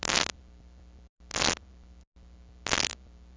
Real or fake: real